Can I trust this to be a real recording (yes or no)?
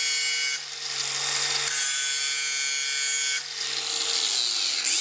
yes